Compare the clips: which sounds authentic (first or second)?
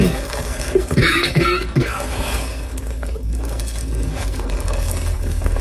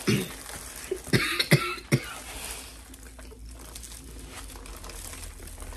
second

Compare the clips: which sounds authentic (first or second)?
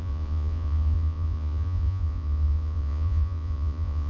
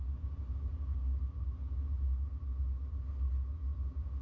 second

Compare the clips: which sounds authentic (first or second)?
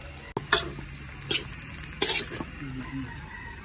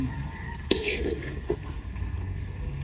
first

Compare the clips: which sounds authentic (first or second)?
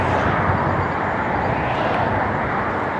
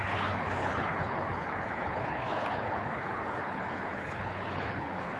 first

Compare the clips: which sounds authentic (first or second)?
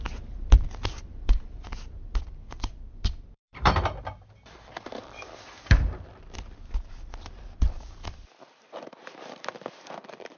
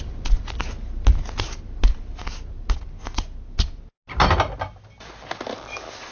second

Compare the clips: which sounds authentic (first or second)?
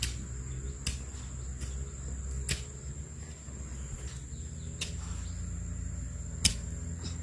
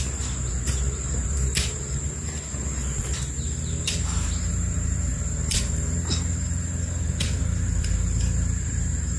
first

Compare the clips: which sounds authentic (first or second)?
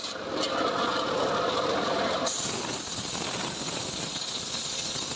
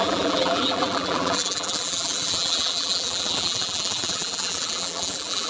first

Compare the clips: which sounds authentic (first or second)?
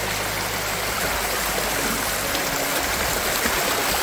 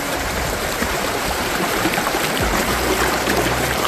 first